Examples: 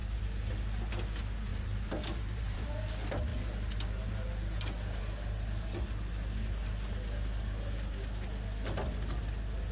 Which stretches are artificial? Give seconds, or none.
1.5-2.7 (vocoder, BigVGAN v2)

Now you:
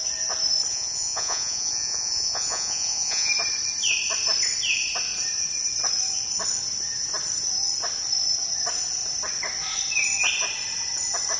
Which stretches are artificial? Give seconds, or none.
0.7-3.3 (vocoder, Vocos)

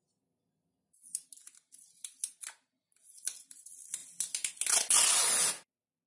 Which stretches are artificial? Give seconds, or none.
none

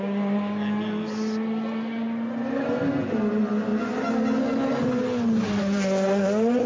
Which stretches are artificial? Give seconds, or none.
none

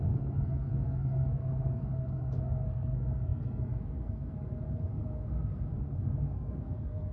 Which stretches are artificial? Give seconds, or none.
0.0-7.1 (codec, SNAC)

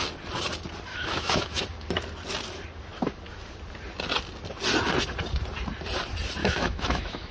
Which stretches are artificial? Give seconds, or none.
0.9-1.6 (autoencoder, DAC-VAE); 6.4-7.3

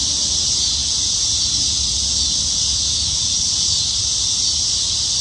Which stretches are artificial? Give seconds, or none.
none